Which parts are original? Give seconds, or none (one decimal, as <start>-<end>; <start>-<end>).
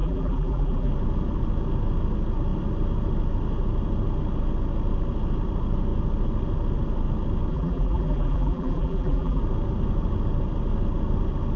0.9-7.5; 9.4-11.6